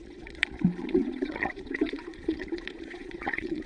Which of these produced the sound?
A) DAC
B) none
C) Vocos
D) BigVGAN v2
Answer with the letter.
C